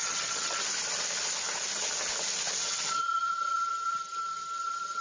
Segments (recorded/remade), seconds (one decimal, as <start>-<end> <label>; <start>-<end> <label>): 0.0-0.6 remade; 0.6-2.6 recorded; 2.6-5.0 remade